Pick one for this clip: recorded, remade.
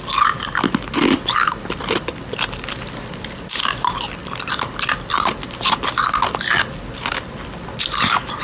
recorded